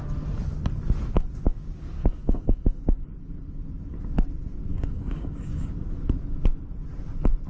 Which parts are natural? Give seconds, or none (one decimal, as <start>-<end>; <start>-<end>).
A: 0.0-2.0; 2.8-4.7; 5.7-7.5

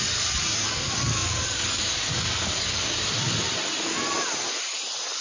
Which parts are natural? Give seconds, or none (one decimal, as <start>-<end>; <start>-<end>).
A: 0.0-0.6; 3.0-5.2

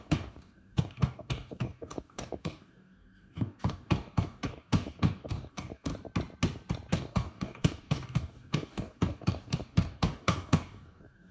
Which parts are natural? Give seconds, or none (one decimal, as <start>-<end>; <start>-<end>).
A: 5.9-6.9

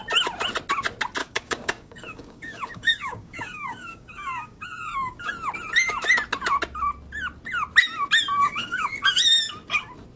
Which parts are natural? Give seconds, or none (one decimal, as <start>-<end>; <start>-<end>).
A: 0.0-1.2; 5.3-8.4; 9.2-10.2

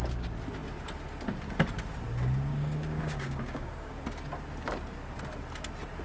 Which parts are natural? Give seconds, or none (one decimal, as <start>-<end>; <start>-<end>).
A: 0.0-2.5; 3.9-6.0

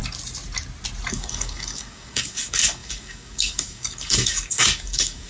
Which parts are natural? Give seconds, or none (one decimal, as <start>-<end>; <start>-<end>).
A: 0.0-1.1

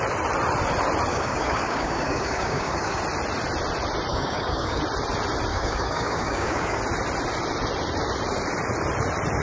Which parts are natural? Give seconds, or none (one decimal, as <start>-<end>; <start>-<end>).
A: 0.0-1.1; 3.0-4.1; 4.8-5.5; 6.8-9.4